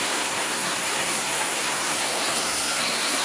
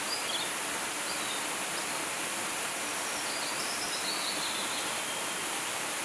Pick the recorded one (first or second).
second